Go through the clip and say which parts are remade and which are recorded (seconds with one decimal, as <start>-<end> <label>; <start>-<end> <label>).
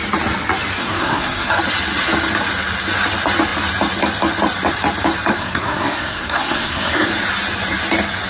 0.0-0.8 recorded; 0.8-1.5 remade; 1.5-5.3 recorded; 5.3-7.1 remade; 7.1-8.3 recorded